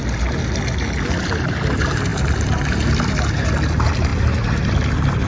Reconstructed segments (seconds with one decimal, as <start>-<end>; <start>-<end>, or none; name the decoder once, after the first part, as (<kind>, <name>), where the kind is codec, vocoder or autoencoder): none